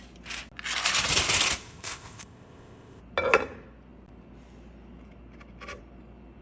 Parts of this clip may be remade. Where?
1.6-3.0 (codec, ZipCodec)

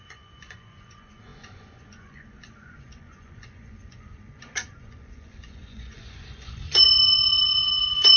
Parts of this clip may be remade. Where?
0.0-8.2 (vocoder, Vocos)

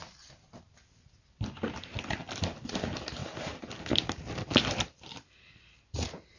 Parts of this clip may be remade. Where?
none

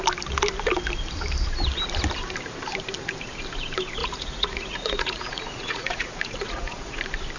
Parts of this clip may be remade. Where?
4.0-7.0 (vocoder, Vocos)